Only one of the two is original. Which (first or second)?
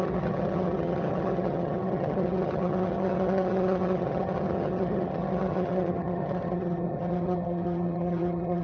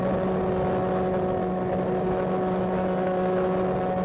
second